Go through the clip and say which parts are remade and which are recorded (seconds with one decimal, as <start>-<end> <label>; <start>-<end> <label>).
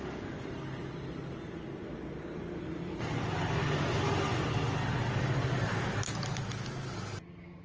0.0-7.6 recorded